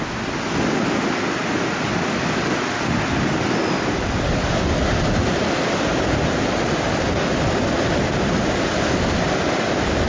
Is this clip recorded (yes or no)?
yes